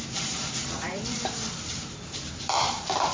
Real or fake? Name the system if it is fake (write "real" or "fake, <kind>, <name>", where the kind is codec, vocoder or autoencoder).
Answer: fake, vocoder, BigVGAN v2